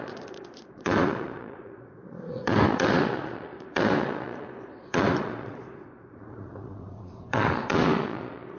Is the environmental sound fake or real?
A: fake